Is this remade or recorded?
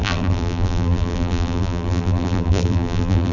remade